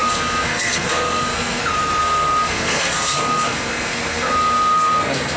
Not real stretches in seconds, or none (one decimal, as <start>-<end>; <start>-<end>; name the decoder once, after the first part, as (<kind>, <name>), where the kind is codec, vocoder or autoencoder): 0.0-1.6 (codec, SNAC); 2.0-5.4